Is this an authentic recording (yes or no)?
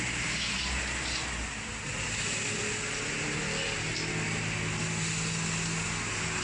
yes